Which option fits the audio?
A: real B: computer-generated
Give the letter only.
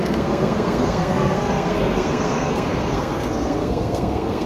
B